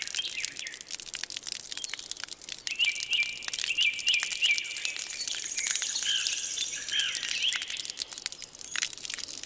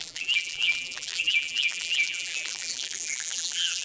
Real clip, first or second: first